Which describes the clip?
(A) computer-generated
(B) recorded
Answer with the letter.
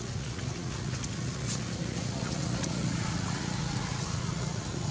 A